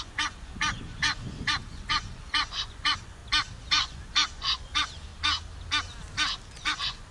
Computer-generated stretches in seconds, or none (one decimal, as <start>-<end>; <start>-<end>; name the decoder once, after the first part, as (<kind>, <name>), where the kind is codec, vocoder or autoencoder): 0.0-3.2 (vocoder, Vocos); 3.7-5.1; 6.5-7.1